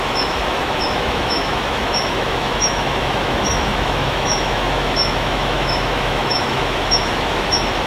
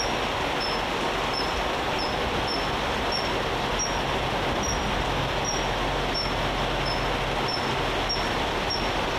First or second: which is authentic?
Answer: second